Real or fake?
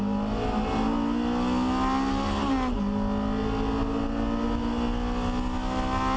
real